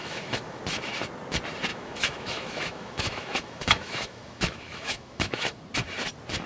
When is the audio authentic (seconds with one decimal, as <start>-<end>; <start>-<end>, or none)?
0.6-1.7; 5.6-6.5